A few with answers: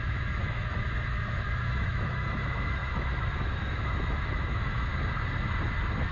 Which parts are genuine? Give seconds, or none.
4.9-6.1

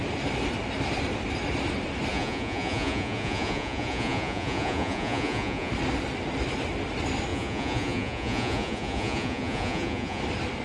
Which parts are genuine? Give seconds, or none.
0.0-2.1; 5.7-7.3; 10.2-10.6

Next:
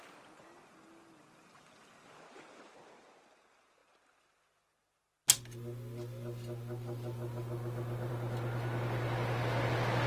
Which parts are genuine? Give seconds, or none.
0.0-10.1